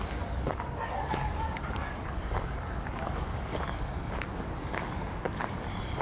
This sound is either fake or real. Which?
fake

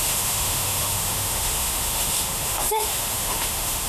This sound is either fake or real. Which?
fake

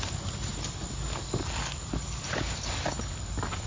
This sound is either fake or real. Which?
real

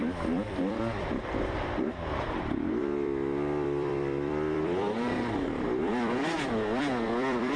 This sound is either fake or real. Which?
fake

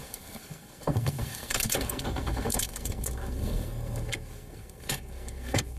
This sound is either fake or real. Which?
fake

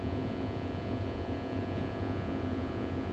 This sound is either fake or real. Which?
fake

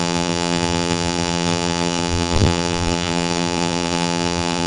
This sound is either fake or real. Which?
fake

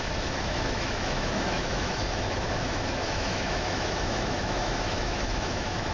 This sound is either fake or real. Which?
fake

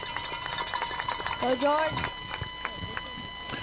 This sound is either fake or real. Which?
real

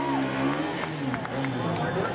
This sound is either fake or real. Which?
real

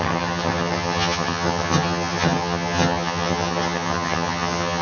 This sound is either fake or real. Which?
fake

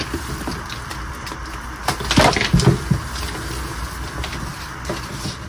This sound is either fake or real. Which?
real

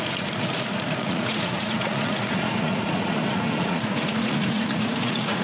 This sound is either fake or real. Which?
fake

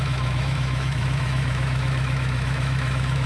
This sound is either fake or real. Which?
fake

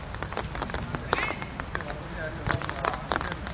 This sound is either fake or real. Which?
real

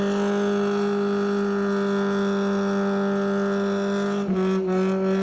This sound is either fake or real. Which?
real